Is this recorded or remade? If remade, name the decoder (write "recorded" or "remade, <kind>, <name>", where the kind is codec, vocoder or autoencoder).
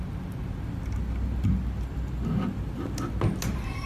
recorded